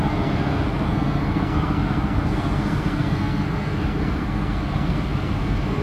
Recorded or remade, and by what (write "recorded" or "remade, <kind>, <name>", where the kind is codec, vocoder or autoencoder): remade, codec, SNAC